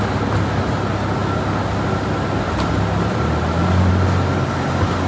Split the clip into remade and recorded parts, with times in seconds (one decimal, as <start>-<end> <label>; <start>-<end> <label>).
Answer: 0.0-5.1 recorded